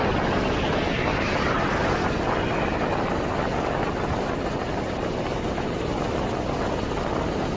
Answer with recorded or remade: recorded